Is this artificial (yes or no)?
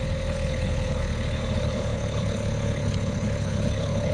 yes